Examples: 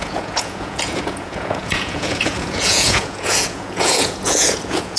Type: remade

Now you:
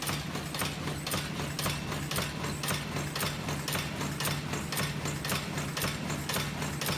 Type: recorded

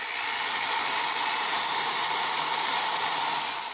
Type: recorded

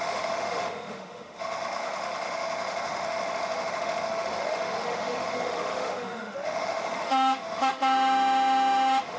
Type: remade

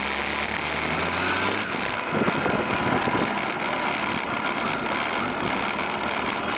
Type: recorded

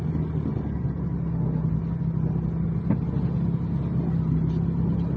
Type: recorded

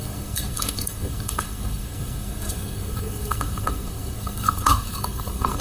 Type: remade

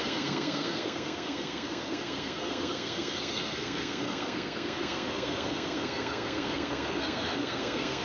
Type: remade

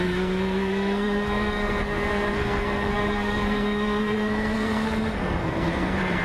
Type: remade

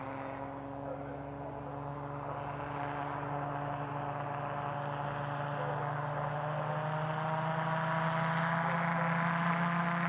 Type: recorded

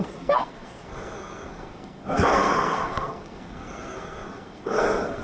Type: remade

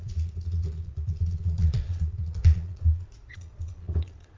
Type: remade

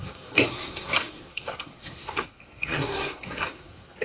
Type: remade